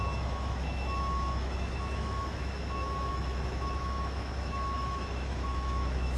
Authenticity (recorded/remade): remade